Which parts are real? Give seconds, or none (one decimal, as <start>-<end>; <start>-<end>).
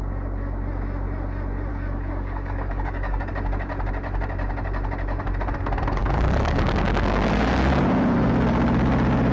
0.0-1.7; 3.3-6.0; 7.8-9.3